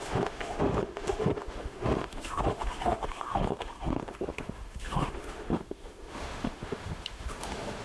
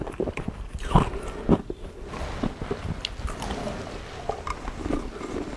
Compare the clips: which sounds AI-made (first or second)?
first